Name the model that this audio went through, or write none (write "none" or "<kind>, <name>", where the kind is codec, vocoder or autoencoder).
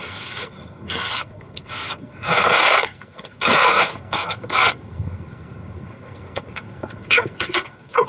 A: codec, SNAC